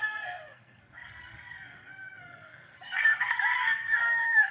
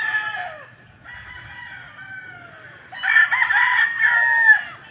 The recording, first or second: second